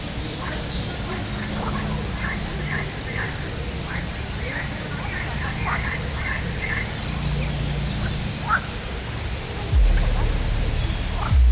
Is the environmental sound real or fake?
real